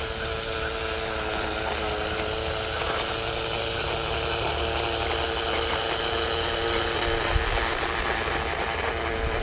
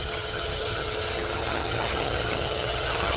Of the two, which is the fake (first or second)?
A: second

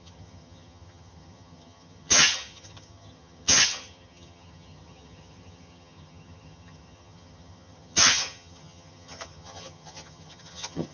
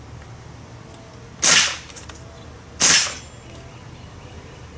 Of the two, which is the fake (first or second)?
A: first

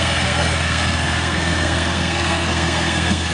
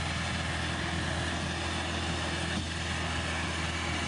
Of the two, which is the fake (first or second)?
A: first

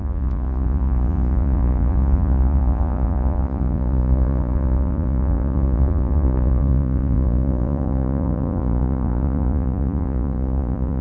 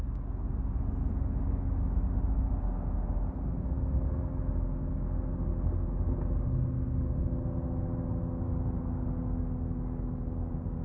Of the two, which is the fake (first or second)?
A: first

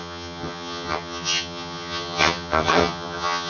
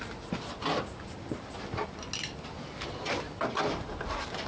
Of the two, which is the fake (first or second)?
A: first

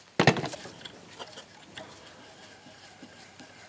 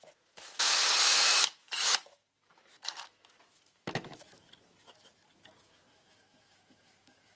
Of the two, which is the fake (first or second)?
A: second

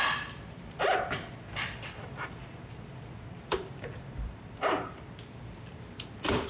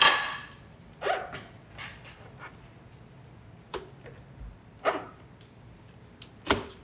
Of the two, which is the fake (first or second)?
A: first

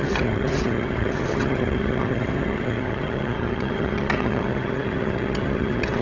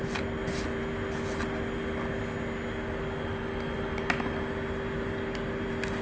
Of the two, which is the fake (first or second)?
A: first